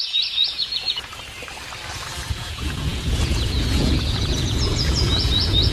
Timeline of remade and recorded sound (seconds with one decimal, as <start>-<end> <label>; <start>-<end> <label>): 0.0-1.1 remade; 1.1-2.3 recorded; 2.3-5.7 remade